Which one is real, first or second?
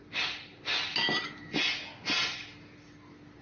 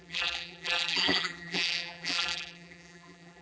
first